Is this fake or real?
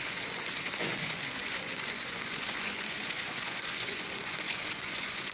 fake